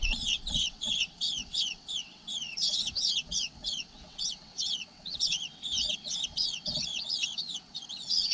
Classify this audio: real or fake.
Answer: fake